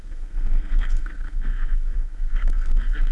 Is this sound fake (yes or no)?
yes